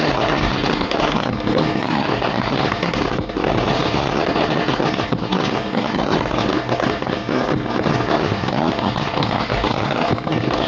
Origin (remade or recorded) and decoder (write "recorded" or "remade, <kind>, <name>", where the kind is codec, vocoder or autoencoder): remade, codec, SNAC